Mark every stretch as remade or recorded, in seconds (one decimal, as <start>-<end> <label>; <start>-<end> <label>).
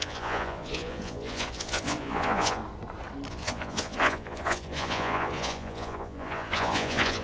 0.0-2.6 remade; 2.6-3.3 recorded; 3.3-7.2 remade